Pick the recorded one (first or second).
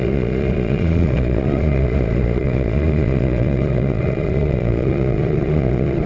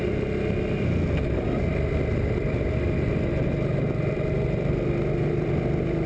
second